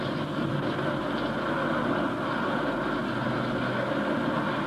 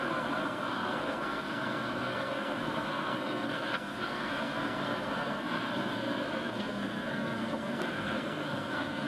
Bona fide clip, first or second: first